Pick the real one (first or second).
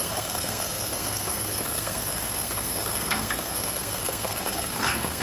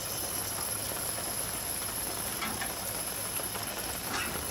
second